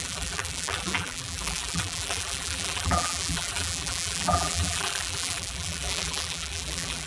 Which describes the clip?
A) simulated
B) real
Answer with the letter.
A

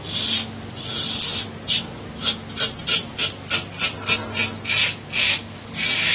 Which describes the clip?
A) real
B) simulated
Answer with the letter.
A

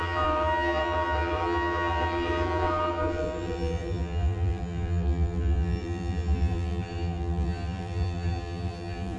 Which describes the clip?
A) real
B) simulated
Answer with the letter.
B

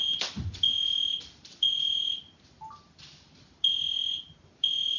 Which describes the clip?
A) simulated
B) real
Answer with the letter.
B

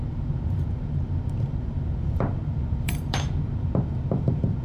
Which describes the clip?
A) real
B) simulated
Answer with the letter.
B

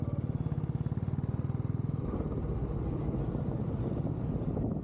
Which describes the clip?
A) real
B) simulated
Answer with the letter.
A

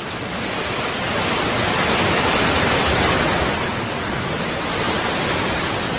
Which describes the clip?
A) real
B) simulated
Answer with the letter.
A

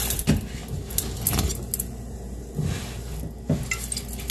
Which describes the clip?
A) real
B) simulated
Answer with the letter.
A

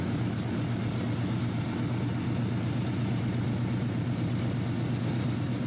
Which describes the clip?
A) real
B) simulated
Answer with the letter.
A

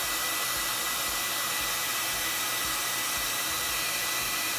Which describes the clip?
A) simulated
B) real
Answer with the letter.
B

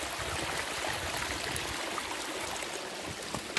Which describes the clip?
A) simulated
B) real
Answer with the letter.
B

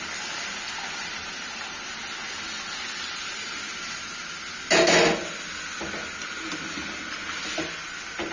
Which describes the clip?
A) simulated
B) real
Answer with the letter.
B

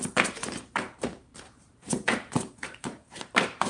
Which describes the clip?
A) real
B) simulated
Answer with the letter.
B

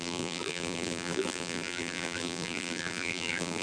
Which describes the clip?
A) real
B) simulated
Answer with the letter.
B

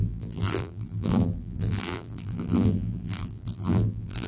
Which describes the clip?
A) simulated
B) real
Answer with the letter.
A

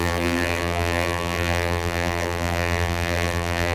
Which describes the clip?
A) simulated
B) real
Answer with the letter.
A